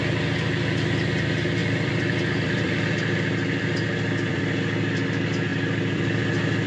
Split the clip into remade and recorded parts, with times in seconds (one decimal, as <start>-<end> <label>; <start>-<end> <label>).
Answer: 0.0-1.6 recorded; 1.6-4.4 remade; 4.4-5.5 recorded; 5.5-6.7 remade